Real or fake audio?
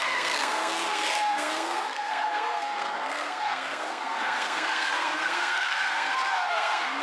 fake